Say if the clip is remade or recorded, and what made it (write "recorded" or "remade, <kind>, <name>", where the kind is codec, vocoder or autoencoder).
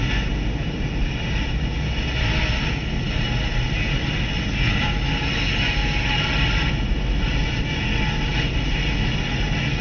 recorded